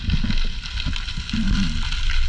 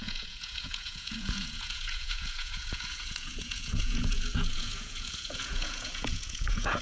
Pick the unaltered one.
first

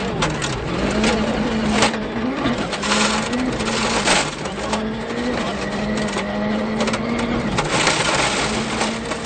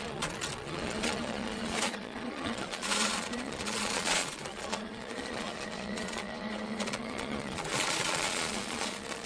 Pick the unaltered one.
first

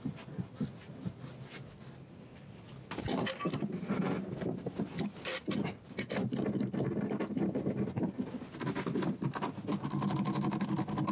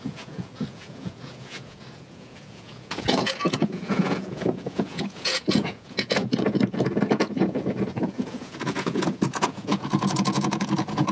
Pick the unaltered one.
first